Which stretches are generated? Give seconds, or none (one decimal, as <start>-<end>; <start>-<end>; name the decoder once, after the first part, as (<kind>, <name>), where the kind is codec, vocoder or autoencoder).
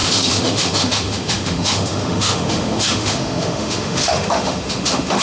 0.0-5.2 (autoencoder, DAC-VAE)